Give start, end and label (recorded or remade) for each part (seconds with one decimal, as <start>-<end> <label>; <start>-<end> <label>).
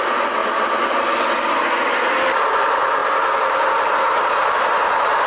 0.0-5.3 recorded